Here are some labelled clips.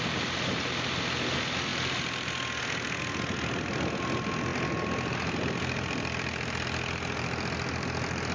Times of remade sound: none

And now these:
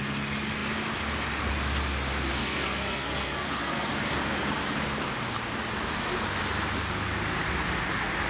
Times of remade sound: 2.4-3.9 (codec, SNAC)

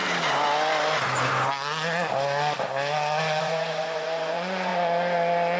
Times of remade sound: 3.4-4.7 (vocoder, Vocos)

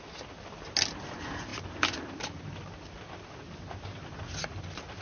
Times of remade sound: none

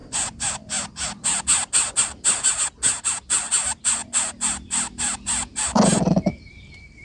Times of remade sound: none

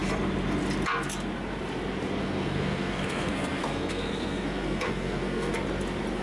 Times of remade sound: 2.2-5.5 (codec, SNAC)